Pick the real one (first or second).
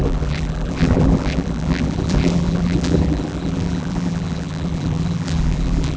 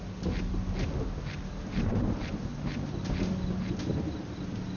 second